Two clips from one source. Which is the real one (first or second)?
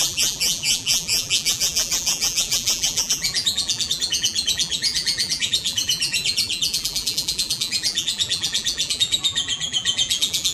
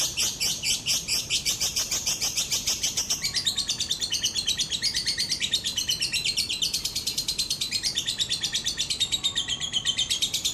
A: second